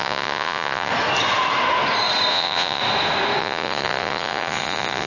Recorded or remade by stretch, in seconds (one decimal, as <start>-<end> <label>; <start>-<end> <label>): 0.0-0.9 remade; 0.9-2.3 recorded; 2.3-2.8 remade; 2.8-3.4 recorded; 3.4-5.1 remade